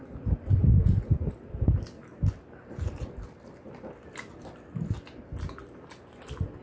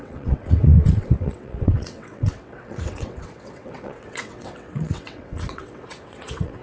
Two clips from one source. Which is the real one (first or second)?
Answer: first